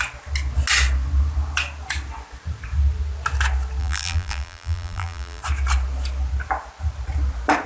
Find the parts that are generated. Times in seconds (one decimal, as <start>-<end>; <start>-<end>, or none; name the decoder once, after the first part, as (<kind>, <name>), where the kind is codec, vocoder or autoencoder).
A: 3.8-5.4 (vocoder, BigVGAN v2)